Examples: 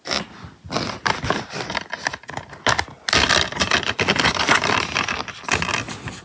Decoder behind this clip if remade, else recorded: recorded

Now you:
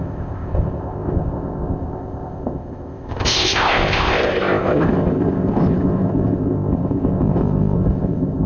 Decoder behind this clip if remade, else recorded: remade, codec, ZipCodec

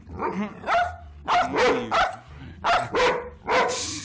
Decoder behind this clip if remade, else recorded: recorded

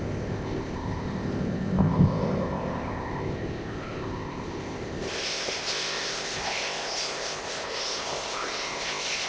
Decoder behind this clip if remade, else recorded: remade, codec, ZipCodec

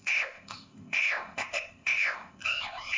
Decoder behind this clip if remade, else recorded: remade, codec, ZipCodec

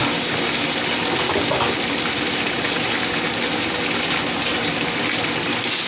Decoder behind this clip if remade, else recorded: recorded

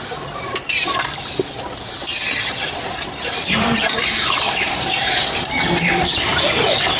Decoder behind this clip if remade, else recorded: recorded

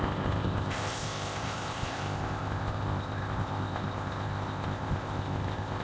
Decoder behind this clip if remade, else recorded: remade, codec, ZipCodec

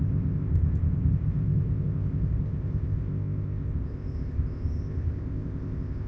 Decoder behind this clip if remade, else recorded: remade, codec, ZipCodec